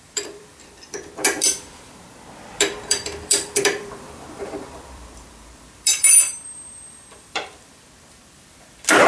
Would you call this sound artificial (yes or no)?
yes